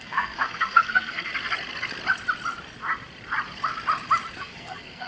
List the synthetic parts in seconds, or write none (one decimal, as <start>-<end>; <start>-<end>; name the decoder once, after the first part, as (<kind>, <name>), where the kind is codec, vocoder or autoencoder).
0.0-1.3 (codec, SNAC); 4.4-5.1